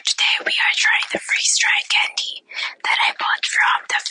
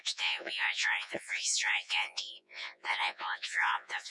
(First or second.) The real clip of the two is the first